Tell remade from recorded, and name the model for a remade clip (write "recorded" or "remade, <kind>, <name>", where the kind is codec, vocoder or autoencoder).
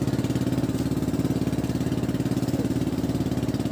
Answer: recorded